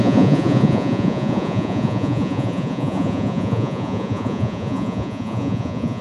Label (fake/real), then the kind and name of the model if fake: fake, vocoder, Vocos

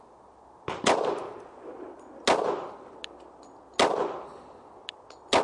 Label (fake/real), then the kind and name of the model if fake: real